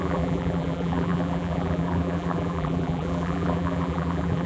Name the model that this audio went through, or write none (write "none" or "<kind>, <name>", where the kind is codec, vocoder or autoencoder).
vocoder, BigVGAN v2